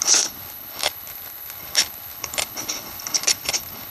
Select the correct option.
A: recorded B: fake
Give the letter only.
B